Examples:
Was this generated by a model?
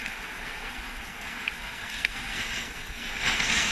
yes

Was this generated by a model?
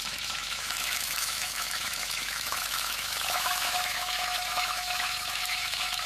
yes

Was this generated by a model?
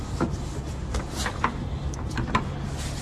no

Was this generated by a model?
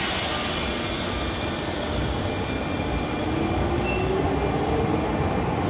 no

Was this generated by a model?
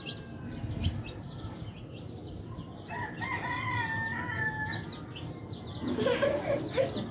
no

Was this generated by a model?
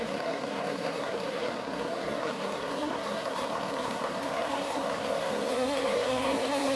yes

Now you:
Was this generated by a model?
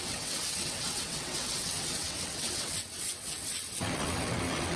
yes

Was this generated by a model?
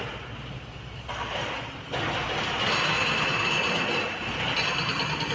no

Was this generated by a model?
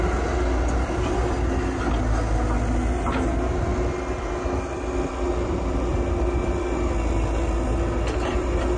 no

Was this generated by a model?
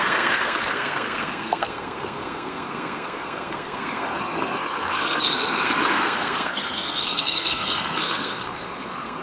yes